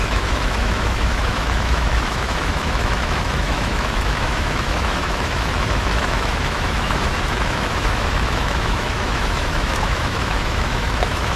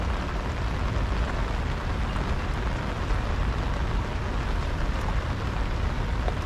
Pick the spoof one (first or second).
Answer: first